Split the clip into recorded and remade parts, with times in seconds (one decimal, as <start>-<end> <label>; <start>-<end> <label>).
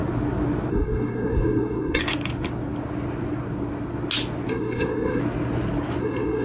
0.0-0.7 recorded; 0.7-2.0 remade; 2.0-4.5 recorded; 4.5-5.2 remade; 5.2-6.0 recorded; 6.0-6.4 remade